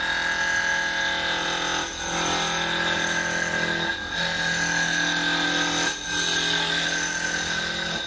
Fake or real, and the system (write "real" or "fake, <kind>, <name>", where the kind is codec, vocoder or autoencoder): real